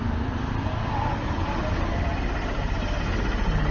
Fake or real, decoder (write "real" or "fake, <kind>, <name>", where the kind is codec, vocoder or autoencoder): real